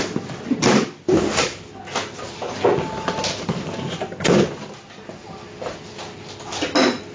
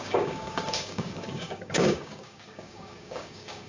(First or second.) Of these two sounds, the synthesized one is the second